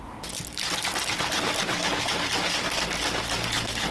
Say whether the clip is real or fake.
real